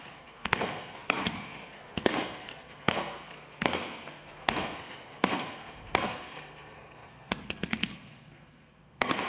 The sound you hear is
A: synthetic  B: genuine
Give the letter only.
A